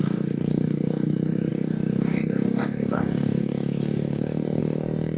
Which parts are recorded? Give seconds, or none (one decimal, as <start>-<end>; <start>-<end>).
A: none

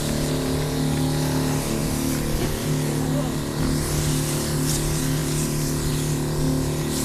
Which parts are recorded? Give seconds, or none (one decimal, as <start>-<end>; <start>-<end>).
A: 0.0-7.0